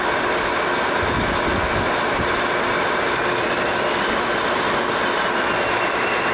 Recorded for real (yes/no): yes